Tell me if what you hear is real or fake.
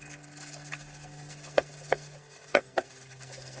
fake